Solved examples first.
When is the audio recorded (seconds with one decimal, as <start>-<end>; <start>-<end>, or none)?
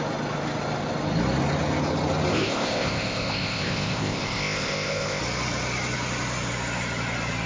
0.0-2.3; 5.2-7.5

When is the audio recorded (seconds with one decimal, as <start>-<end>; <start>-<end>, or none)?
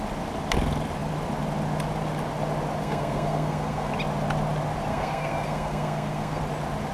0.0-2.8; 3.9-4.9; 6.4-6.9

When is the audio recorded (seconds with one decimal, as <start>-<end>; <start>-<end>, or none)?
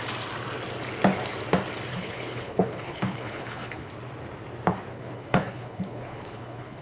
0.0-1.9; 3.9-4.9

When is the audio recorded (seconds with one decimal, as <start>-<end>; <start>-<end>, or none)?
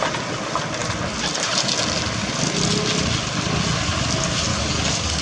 0.0-4.5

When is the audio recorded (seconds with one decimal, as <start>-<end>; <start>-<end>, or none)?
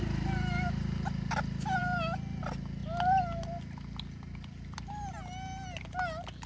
0.0-6.5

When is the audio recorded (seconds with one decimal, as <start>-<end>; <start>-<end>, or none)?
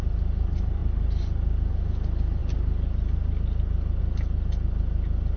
0.0-5.4